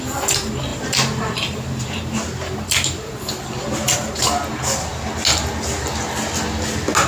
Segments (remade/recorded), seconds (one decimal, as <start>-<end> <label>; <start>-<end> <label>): 0.0-0.7 recorded; 0.7-3.3 remade; 3.3-7.1 recorded